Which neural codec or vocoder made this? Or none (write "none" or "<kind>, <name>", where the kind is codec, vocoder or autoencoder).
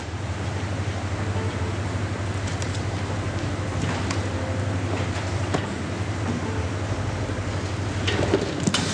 none